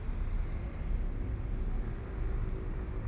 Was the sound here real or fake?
real